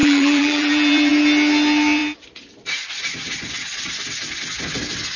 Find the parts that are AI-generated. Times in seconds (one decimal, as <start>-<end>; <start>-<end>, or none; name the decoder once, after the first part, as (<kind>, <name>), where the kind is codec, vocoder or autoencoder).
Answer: 0.0-1.1 (vocoder, BigVGAN v2)